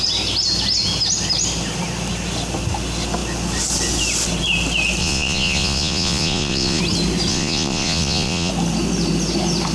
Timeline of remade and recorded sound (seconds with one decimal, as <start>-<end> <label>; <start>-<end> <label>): 0.0-5.0 recorded; 5.0-6.8 remade; 6.8-7.3 recorded; 7.3-8.5 remade; 8.5-9.7 recorded